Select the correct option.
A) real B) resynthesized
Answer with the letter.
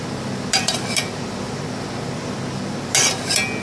A